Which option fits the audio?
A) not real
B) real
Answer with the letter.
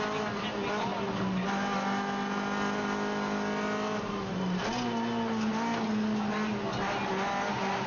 B